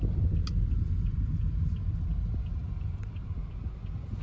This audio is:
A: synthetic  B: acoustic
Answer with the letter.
B